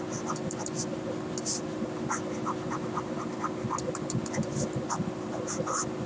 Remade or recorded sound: recorded